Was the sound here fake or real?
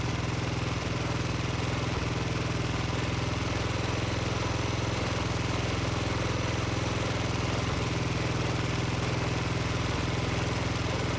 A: real